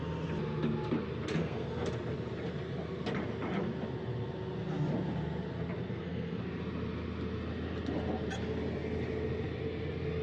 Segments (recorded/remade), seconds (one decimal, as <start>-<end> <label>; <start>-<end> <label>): 0.0-1.4 recorded; 1.4-1.9 remade; 1.9-5.9 recorded; 5.9-6.4 remade; 6.4-10.2 recorded